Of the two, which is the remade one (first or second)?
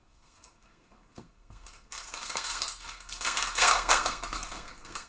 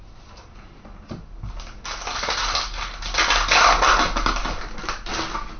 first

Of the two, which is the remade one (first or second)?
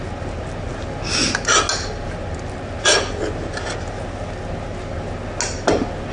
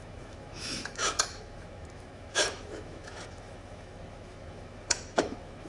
second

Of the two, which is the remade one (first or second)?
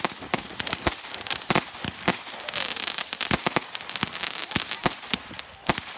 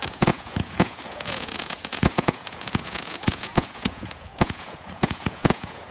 second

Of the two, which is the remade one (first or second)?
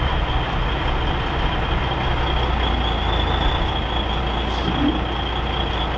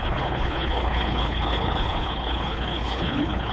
second